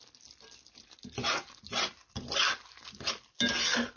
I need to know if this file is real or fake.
real